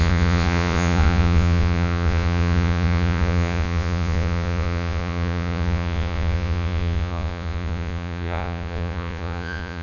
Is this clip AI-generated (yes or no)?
yes